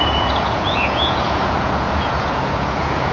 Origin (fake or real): fake